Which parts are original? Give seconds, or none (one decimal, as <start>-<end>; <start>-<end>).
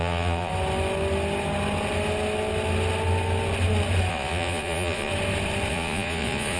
0.5-4.1; 5.1-5.7